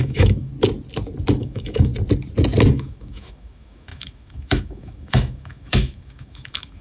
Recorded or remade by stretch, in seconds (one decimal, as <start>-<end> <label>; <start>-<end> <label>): 0.0-0.5 remade; 0.5-1.4 recorded; 1.4-1.9 remade; 1.9-2.7 recorded; 2.7-6.8 remade